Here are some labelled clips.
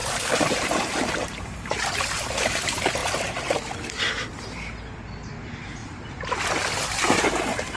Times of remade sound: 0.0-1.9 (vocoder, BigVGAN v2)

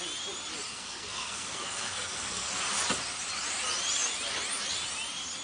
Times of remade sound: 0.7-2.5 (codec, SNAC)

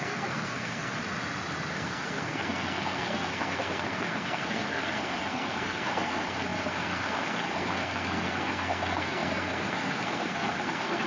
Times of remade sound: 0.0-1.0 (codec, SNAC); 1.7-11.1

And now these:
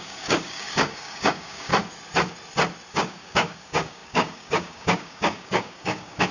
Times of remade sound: 0.0-1.7 (codec, DAC); 2.9-6.3